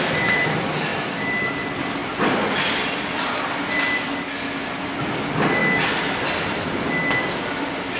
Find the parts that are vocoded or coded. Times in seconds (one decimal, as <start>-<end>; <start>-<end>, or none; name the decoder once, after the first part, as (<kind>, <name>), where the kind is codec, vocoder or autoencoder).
0.9-1.5 (vocoder, BigVGAN v2)